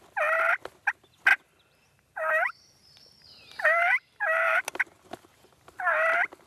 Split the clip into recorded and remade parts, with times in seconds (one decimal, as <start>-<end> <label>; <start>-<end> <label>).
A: 0.0-1.3 recorded; 1.3-4.6 remade; 4.6-6.5 recorded